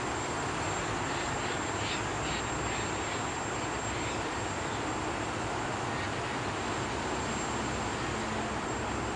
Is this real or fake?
real